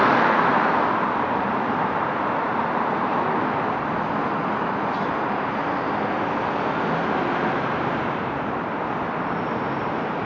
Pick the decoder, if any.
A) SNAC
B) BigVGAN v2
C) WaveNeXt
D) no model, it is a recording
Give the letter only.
D